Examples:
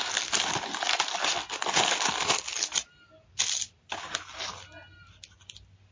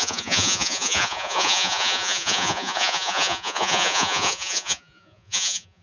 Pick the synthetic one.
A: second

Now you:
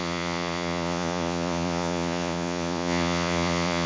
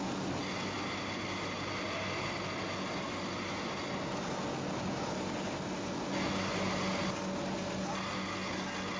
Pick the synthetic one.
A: first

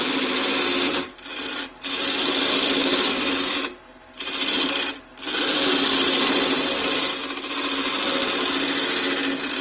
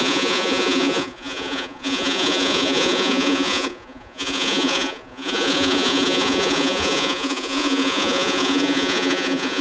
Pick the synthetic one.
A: second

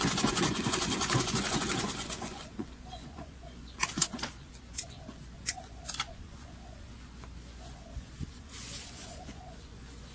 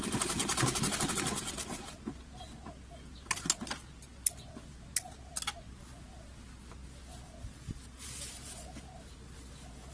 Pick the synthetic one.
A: first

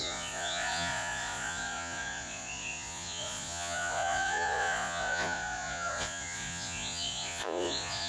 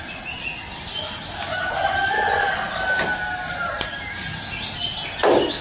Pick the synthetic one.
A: first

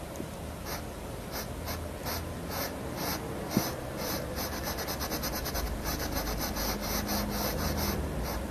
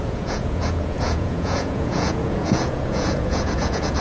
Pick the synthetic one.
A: second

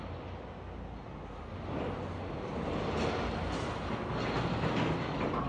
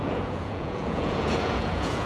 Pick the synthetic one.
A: second